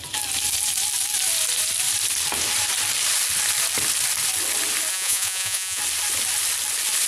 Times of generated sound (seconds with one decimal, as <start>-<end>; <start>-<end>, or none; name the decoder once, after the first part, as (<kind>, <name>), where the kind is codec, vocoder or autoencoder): 4.9-5.8 (vocoder, Vocos)